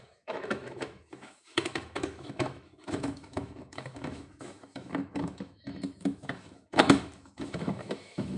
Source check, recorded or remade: remade